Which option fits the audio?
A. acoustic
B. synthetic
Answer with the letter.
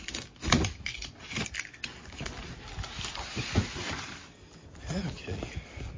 A